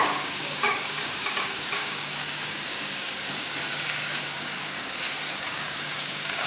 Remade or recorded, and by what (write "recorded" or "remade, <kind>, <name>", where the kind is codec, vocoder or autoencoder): remade, codec, DAC